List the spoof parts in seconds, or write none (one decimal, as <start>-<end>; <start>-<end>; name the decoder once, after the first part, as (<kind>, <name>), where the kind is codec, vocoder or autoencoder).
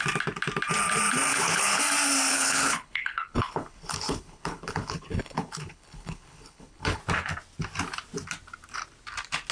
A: 1.3-1.8 (codec, HILCodec); 2.3-7.0